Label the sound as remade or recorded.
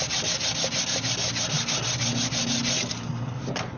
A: recorded